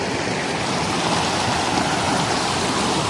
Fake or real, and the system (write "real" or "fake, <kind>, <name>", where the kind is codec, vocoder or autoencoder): real